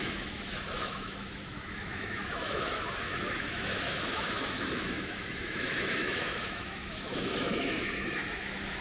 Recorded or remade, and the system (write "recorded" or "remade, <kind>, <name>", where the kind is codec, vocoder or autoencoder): remade, autoencoder, DAC-VAE